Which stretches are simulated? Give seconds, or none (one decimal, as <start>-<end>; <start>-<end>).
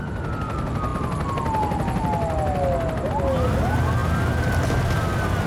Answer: none